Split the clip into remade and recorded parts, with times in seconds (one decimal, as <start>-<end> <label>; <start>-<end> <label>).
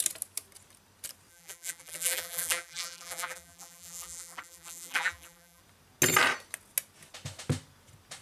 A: 0.0-1.3 recorded; 1.3-5.6 remade; 5.6-8.2 recorded